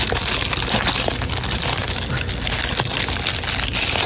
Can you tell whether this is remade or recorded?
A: recorded